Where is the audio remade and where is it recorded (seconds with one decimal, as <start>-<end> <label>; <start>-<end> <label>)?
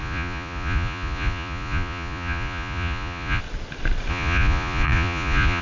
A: 0.0-3.4 remade; 3.4-4.1 recorded; 4.1-5.6 remade